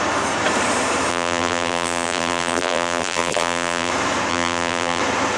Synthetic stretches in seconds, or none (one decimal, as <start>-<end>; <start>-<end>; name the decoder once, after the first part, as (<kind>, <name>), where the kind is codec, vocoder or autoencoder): 1.1-3.9 (vocoder, BigVGAN v2); 4.3-5.0